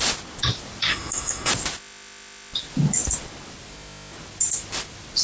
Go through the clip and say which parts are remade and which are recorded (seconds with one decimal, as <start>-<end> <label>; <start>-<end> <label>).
0.0-0.9 recorded; 0.9-1.5 remade; 1.5-5.2 recorded